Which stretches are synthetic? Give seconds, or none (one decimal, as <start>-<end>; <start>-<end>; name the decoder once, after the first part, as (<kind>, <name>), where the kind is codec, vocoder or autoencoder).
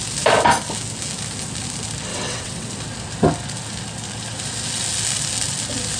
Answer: 2.1-2.7 (vocoder, WaveNeXt)